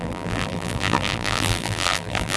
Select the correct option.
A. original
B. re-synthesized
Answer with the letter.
B